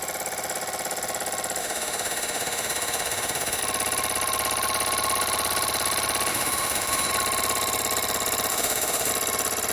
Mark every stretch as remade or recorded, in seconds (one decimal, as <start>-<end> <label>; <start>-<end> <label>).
0.0-1.6 recorded; 1.6-3.6 remade; 3.6-6.3 recorded; 6.3-7.1 remade; 7.1-8.5 recorded; 8.5-9.1 remade; 9.1-9.7 recorded

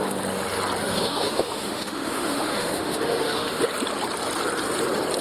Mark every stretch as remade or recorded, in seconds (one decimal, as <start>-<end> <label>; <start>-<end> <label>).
0.0-0.8 recorded; 0.8-3.6 remade; 3.6-5.2 recorded

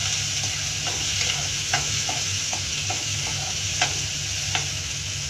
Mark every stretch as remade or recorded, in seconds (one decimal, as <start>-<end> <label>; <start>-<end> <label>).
0.0-1.3 recorded; 1.3-3.7 remade; 3.7-4.7 recorded; 4.7-5.3 remade

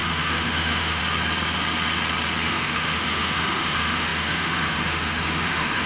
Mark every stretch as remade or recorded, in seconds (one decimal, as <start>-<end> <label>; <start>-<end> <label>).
0.0-1.0 remade; 1.0-2.5 recorded; 2.5-5.9 remade

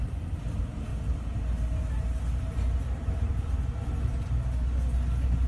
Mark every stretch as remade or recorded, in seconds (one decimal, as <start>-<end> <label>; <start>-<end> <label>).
0.0-5.5 recorded

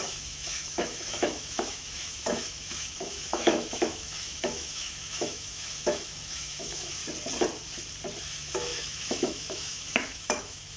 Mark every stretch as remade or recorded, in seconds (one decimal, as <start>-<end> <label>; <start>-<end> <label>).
0.0-7.0 remade; 7.0-8.2 recorded; 8.2-10.8 remade